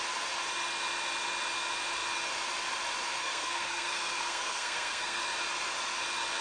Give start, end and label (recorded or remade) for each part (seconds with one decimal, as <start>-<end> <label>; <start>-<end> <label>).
0.0-3.2 recorded; 3.2-5.2 remade; 5.2-6.4 recorded